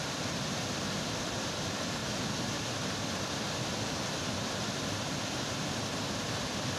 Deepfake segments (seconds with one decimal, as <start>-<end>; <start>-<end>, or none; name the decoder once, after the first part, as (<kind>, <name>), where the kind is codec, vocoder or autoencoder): 1.2-2.0 (vocoder, BigVGAN v2); 6.1-6.8